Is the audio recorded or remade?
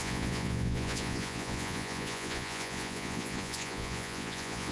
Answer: remade